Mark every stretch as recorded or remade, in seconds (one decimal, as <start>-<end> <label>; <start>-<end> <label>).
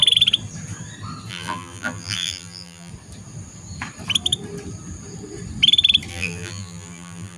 0.0-1.3 recorded; 1.3-2.9 remade; 2.9-6.1 recorded; 6.1-7.4 remade